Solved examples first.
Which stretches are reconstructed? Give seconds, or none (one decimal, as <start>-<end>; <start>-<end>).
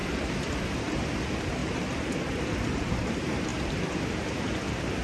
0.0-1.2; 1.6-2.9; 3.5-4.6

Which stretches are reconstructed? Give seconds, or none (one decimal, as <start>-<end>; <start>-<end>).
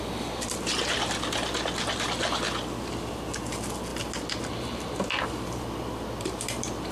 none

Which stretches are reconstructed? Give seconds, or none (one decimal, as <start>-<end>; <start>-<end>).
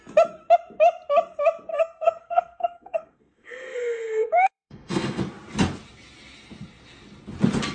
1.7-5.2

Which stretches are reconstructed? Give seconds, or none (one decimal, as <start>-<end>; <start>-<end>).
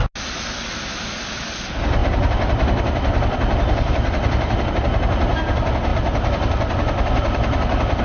2.0-4.7; 5.9-8.0